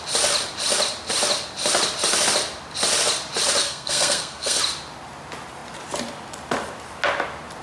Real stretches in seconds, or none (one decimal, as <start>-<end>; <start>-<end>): 0.0-3.6; 4.6-7.6